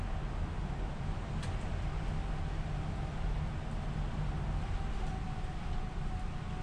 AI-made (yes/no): no